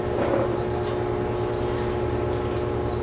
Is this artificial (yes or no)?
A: no